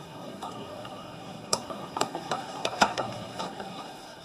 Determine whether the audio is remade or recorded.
remade